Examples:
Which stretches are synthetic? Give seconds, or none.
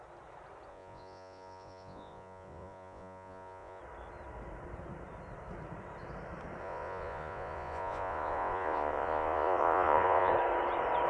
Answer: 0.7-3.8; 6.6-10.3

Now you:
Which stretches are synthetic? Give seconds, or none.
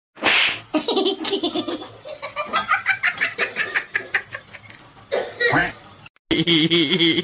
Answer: 2.5-3.4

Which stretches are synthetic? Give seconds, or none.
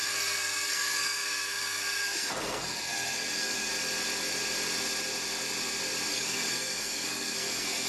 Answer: 0.0-3.7; 6.1-7.9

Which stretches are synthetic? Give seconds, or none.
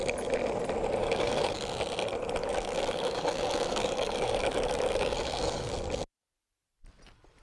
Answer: 1.0-1.5; 2.4-5.7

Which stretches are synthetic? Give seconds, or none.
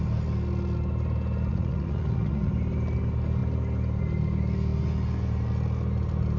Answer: 1.5-2.5